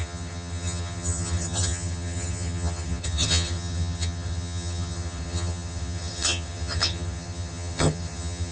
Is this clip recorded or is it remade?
remade